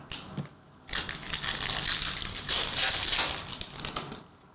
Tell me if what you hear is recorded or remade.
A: recorded